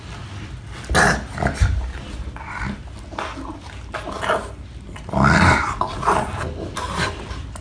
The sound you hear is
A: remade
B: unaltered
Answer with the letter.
B